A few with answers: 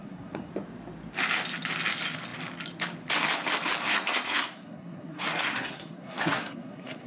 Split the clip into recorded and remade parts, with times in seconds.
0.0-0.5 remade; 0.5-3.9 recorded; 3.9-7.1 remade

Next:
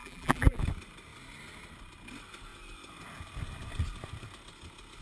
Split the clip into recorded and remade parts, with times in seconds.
0.0-0.6 remade; 0.6-5.0 recorded

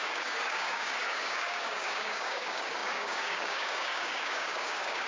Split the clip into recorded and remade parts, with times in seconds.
0.0-5.1 remade

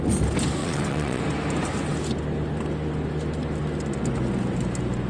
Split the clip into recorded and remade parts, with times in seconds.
0.0-0.6 recorded; 0.6-1.2 remade; 1.2-5.1 recorded

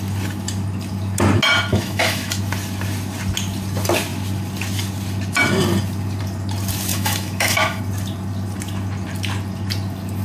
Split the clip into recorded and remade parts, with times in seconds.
0.0-1.7 recorded; 1.7-2.4 remade; 2.4-6.9 recorded; 6.9-7.8 remade; 7.8-10.2 recorded

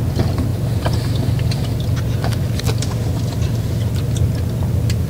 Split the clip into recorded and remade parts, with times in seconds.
0.0-5.1 recorded